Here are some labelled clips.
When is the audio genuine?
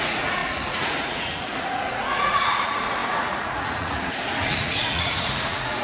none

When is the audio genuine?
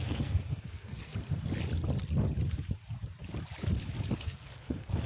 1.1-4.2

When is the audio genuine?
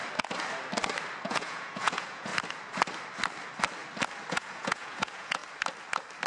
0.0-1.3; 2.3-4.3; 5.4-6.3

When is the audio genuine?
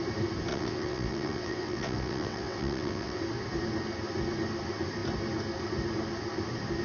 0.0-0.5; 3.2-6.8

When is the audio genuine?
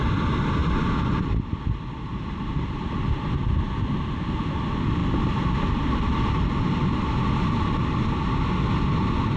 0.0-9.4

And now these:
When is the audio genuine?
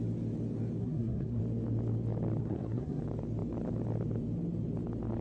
0.0-0.8; 1.4-2.4; 3.0-5.2